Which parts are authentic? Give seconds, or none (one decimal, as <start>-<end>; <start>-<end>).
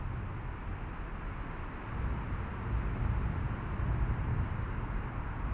0.0-4.3; 5.0-5.5